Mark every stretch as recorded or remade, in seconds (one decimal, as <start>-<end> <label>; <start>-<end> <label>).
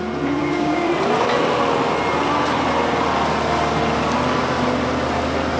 0.0-0.4 recorded; 0.4-0.9 remade; 0.9-5.6 recorded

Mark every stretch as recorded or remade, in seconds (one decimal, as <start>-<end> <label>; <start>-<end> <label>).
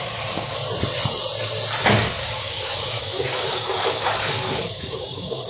0.0-0.6 remade; 0.6-1.9 recorded; 1.9-5.5 remade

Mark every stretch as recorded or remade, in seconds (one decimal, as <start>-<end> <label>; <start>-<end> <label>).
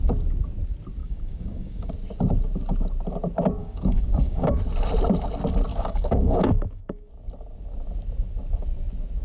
0.0-1.0 recorded; 1.0-1.9 remade; 1.9-3.6 recorded; 3.6-4.6 remade; 4.6-5.7 recorded; 5.7-7.1 remade; 7.1-9.2 recorded